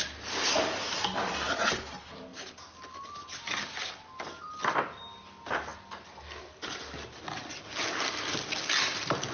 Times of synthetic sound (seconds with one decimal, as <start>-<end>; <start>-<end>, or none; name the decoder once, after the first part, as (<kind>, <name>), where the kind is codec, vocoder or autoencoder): none